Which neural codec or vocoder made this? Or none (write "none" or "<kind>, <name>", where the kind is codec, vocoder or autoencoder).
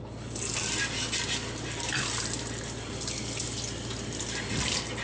none